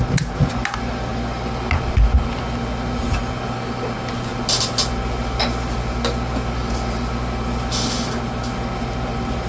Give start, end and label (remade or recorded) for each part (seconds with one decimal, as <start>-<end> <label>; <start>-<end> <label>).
0.0-9.5 recorded